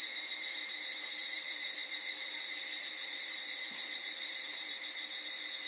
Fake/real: fake